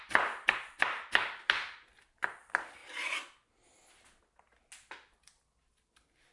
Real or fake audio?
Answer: real